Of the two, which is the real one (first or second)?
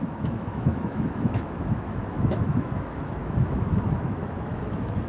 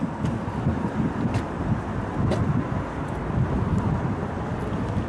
second